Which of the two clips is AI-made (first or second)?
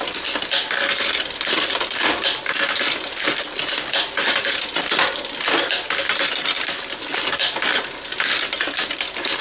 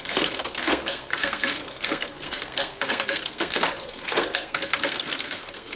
second